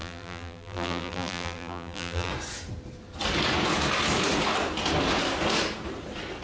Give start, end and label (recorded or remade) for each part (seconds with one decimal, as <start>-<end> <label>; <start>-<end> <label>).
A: 0.0-2.3 remade; 2.3-6.4 recorded